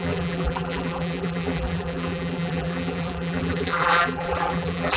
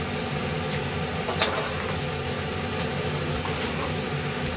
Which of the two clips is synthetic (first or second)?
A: first